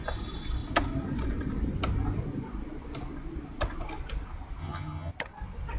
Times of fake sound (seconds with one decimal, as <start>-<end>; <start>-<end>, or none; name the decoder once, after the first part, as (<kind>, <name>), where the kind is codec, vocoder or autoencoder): 4.6-5.1 (vocoder, HiFi-GAN)